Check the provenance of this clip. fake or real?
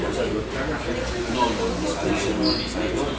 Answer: real